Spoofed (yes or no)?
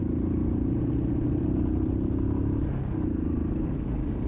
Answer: no